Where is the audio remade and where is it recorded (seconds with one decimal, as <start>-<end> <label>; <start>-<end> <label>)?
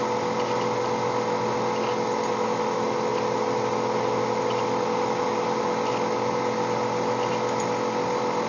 0.0-8.5 recorded